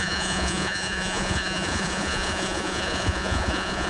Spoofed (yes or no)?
yes